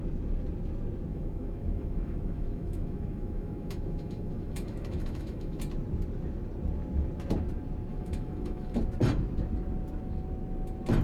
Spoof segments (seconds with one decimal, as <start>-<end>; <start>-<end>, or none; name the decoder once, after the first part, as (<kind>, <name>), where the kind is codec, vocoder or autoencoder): 1.1-5.6 (autoencoder, DAC-VAE); 7.9-8.8